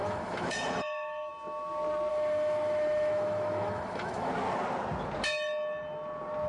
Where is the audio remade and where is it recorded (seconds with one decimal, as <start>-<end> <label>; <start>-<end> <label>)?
0.0-1.3 remade; 1.3-2.1 recorded; 2.1-4.3 remade; 4.3-6.5 recorded